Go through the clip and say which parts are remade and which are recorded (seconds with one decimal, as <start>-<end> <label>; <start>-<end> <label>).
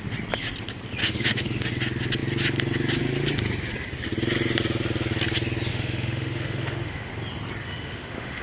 0.0-1.0 recorded; 1.0-1.7 remade; 1.7-5.7 recorded; 5.7-7.1 remade; 7.1-7.6 recorded; 7.6-8.4 remade